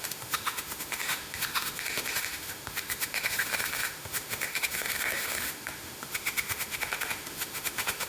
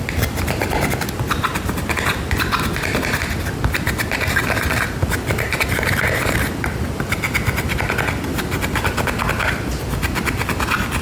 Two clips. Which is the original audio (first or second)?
second